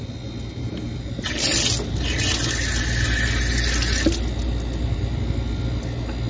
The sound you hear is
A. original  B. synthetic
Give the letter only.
A